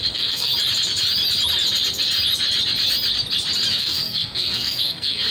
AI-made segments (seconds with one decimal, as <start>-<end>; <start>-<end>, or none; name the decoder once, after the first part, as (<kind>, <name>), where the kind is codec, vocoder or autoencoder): 0.0-0.5 (codec, SNAC); 3.7-5.3